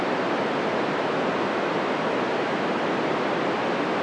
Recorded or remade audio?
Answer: recorded